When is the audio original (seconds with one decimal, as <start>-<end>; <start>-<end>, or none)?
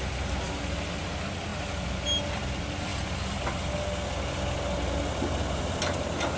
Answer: 0.0-6.4